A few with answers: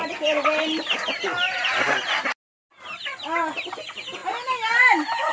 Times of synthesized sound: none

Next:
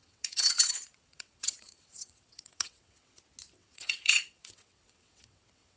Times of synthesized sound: 0.0-3.2 (vocoder, WaveNeXt); 3.6-5.8